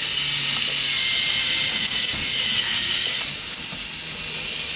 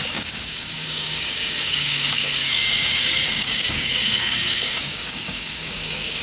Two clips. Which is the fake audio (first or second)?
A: second